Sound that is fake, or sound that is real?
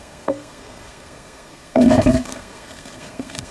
fake